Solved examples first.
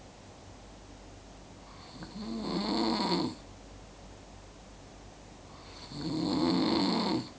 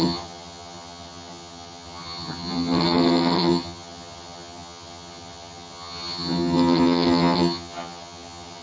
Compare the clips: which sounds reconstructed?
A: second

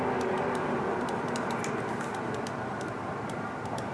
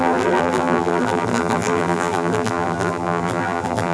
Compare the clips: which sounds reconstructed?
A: second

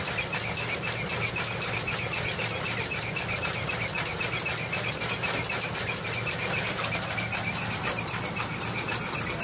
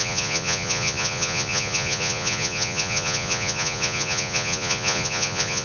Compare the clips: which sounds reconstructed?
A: second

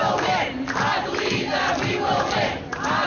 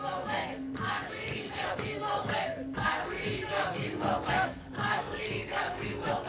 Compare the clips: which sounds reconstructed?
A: second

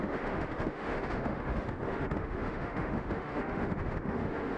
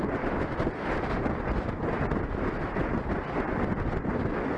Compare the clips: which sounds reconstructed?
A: first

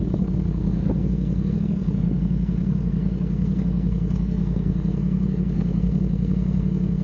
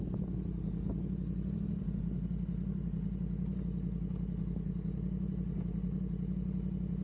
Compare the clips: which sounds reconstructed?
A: first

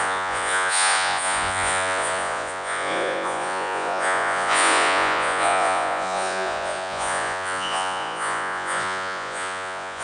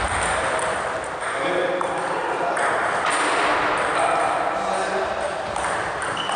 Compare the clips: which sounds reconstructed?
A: first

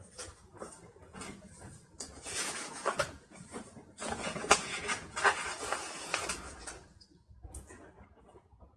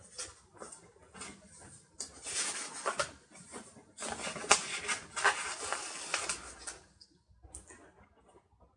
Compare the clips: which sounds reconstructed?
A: first